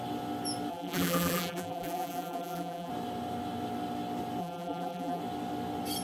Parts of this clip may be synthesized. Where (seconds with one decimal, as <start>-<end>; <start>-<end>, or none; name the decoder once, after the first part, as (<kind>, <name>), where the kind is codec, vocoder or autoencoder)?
0.7-2.9 (vocoder, BigVGAN v2); 4.4-5.2